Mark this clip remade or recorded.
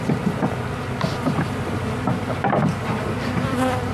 recorded